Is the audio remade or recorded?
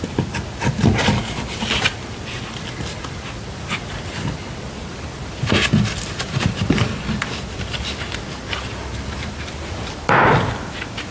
recorded